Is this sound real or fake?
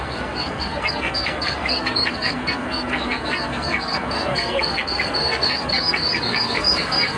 fake